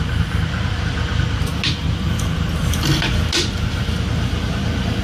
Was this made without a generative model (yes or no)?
yes